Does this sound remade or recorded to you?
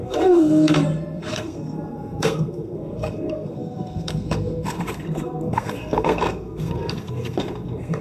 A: remade